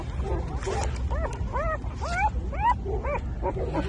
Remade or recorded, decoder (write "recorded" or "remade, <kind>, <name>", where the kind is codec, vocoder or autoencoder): recorded